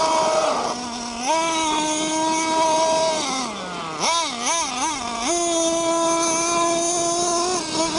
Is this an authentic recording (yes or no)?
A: yes